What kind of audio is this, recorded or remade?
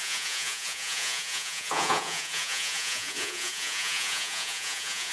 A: remade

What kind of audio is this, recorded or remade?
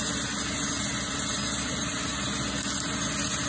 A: recorded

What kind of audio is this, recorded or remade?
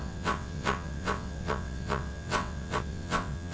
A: remade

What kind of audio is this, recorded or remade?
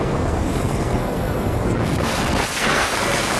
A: remade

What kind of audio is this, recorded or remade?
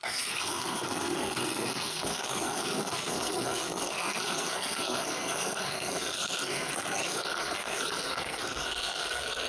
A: remade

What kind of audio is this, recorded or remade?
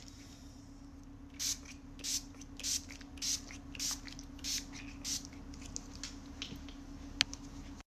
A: recorded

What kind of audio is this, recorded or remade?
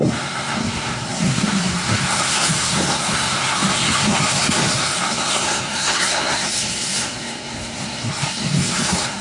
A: remade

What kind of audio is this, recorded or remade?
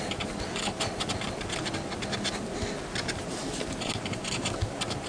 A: recorded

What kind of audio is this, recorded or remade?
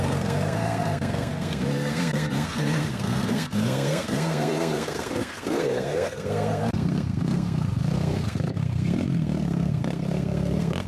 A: remade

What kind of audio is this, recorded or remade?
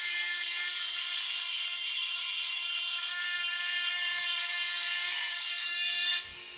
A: remade